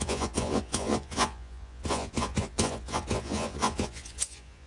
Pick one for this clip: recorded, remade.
remade